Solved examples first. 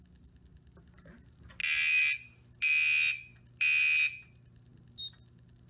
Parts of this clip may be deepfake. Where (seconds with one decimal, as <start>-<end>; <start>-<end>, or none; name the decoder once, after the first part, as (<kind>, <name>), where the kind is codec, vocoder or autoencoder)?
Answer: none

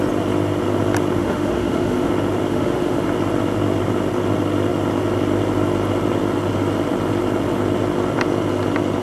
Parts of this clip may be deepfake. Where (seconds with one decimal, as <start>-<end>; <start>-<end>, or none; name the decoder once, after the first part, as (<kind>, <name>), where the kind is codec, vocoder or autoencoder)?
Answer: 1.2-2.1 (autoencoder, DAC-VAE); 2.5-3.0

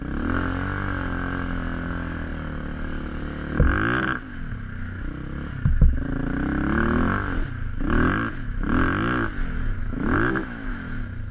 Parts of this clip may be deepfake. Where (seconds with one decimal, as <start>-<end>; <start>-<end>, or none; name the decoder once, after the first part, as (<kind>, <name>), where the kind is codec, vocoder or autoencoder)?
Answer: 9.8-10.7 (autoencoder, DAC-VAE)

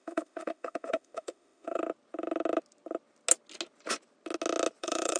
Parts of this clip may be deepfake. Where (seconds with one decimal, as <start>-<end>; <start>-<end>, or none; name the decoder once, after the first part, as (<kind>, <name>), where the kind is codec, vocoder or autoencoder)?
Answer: 0.0-1.8 (autoencoder, DAC-VAE); 4.8-5.2